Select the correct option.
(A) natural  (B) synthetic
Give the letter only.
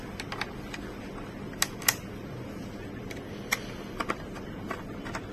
A